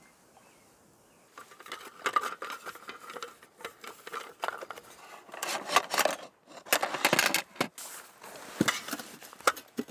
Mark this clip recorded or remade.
recorded